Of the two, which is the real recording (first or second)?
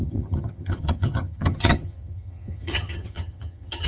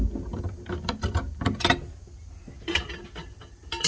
second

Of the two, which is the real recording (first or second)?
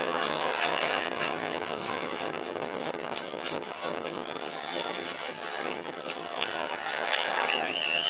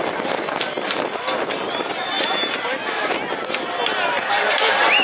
second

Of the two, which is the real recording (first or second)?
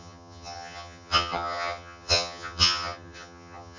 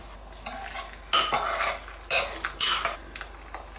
second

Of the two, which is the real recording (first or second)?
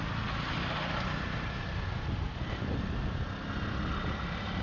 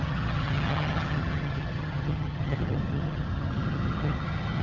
first